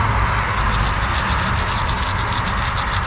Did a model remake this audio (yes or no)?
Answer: no